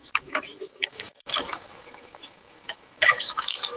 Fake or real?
fake